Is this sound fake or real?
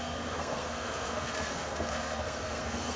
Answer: fake